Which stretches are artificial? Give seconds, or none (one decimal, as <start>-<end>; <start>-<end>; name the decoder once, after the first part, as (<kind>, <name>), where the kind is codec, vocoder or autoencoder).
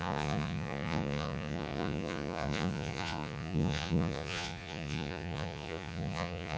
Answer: 0.0-6.6 (vocoder, Vocos)